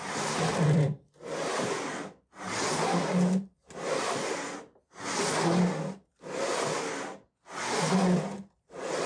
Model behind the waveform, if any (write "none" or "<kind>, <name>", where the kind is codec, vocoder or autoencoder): none